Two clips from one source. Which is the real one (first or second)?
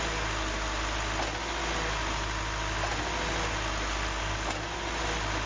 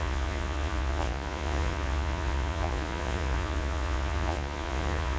first